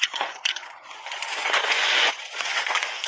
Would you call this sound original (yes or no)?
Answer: no